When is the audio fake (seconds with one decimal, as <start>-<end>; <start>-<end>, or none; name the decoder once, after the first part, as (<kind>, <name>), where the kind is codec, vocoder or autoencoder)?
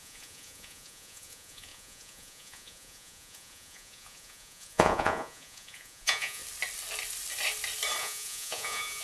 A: 0.0-6.4 (vocoder, Vocos); 8.0-9.0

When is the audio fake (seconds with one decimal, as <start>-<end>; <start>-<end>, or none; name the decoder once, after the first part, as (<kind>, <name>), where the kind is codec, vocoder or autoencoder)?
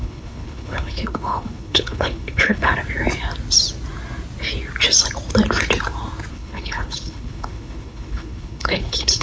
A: 0.0-2.7 (codec, HILCodec); 6.3-9.2